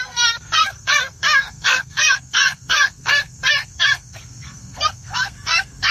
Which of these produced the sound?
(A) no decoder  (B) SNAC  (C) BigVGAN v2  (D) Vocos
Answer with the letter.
B